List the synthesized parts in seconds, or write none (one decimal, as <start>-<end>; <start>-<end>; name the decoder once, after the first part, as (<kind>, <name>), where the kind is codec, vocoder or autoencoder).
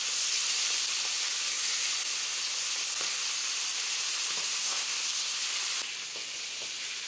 4.6-5.4 (codec, SNAC)